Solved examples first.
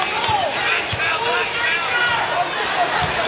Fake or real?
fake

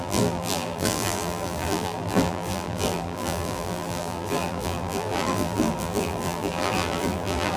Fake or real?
fake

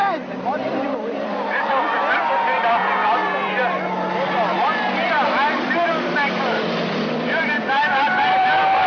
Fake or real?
fake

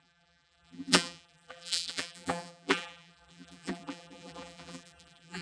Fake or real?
fake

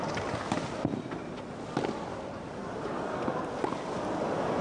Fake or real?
real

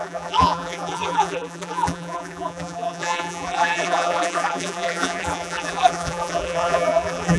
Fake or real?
fake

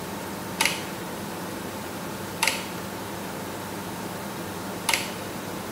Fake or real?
fake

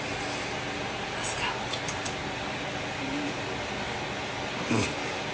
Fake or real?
real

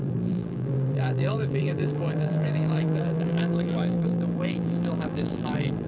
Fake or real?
fake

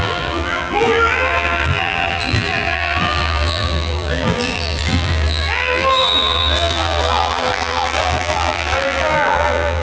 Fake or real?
fake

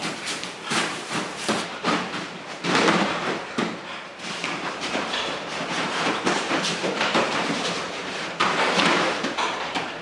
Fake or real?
fake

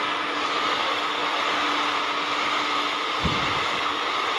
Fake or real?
real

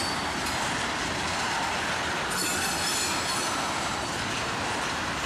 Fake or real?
real